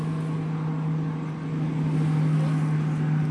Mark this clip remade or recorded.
recorded